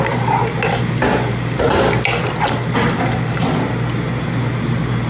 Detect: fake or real real